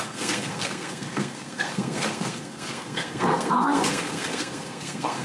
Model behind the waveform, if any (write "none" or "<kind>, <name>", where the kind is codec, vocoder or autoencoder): codec, SNAC